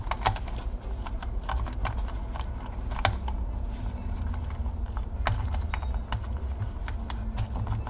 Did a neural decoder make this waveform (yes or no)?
no